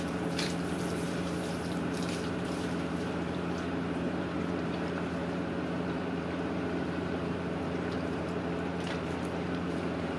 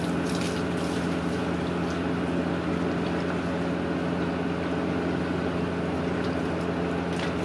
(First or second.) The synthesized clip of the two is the first